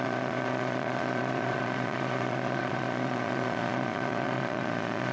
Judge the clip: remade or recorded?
remade